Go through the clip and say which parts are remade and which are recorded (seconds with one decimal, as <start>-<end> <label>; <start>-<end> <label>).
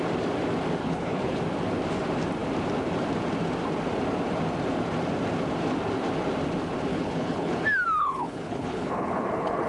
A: 0.0-0.8 recorded; 0.8-1.4 remade; 1.4-6.9 recorded; 6.9-7.6 remade; 7.6-8.0 recorded; 8.0-9.7 remade